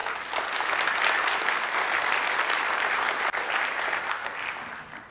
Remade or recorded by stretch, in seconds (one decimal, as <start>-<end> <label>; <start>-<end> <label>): 0.0-1.4 recorded; 1.4-1.8 remade; 1.8-4.0 recorded; 4.0-4.4 remade; 4.4-5.1 recorded